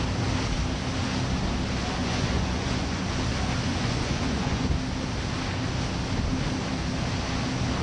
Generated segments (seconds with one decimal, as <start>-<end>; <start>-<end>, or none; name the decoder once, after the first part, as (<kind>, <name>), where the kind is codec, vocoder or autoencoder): 2.0-3.0 (vocoder, Vocos); 3.7-4.7